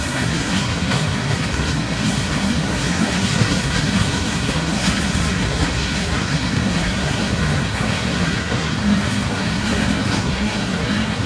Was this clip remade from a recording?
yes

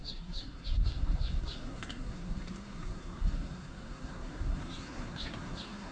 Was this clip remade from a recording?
yes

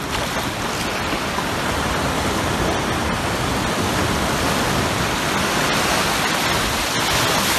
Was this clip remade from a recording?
no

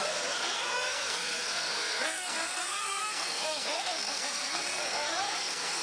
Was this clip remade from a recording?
yes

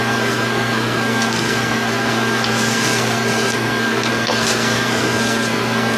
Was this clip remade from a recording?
yes